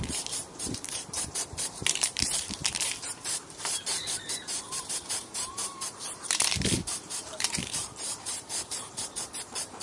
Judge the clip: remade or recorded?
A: remade